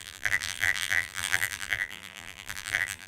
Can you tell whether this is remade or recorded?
remade